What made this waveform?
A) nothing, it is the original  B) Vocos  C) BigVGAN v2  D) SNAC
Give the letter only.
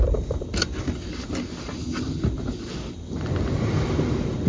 A